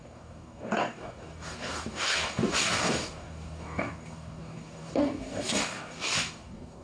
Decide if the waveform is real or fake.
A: fake